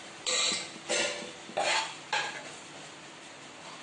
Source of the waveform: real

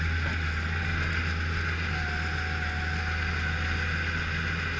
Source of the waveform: real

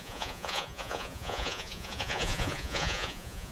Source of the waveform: fake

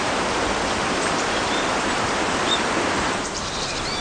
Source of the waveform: fake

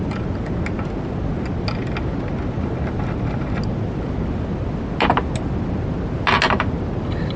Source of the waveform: real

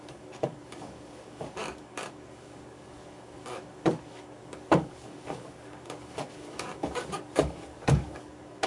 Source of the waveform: fake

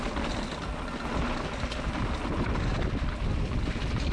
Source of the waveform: real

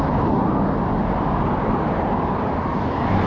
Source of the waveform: real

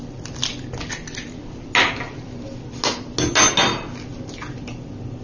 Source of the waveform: real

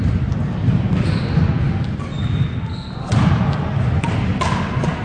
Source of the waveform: real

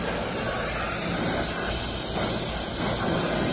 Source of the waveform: real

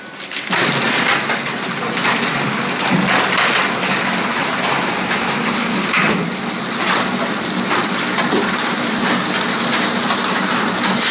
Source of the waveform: real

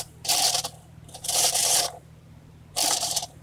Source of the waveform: fake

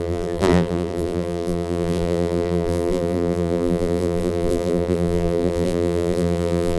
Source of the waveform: fake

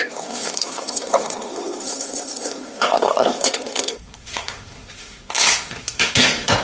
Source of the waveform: fake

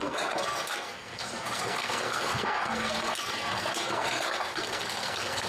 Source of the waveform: fake